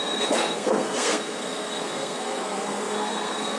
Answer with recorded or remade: remade